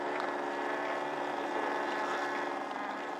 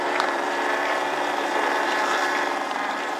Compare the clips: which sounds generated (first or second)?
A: second